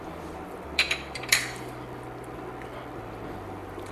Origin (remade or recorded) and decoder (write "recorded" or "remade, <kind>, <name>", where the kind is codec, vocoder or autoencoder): remade, vocoder, BigVGAN v2